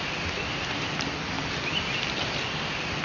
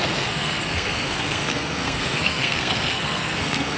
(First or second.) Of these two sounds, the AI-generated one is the second